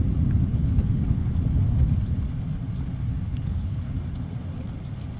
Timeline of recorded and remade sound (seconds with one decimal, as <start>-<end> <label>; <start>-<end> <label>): 0.0-0.5 recorded; 0.5-1.3 remade; 1.3-3.3 recorded; 3.3-3.9 remade; 3.9-5.2 recorded